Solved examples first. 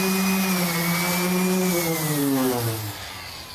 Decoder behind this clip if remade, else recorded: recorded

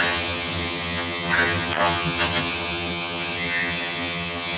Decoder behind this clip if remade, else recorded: remade, vocoder, HiFi-GAN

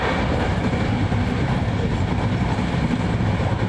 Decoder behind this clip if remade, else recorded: remade, vocoder, BigVGAN v2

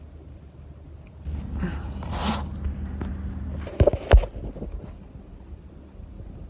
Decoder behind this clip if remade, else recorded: recorded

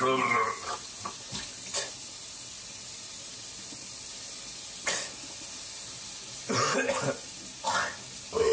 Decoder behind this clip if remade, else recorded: recorded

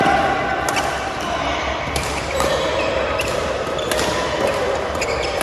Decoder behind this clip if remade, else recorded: recorded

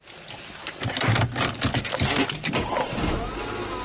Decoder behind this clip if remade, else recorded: recorded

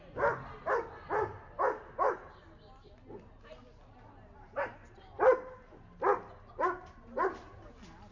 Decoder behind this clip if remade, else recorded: recorded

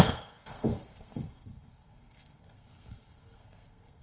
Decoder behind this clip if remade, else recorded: remade, codec, SNAC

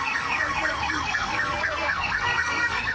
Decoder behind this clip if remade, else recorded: remade, codec, SNAC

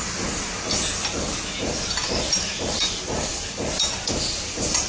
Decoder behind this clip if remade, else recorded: recorded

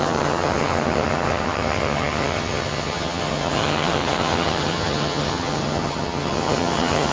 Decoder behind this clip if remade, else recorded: remade, vocoder, HiFi-GAN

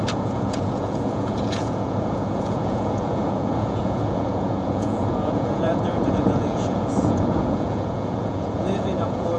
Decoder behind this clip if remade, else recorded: remade, vocoder, Vocos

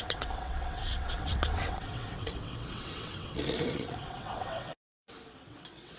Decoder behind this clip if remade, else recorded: remade, vocoder, WaveNeXt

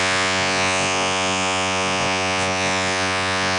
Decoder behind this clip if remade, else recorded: remade, vocoder, Vocos